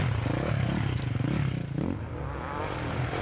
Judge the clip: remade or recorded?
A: recorded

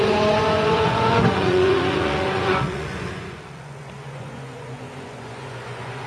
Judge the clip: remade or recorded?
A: remade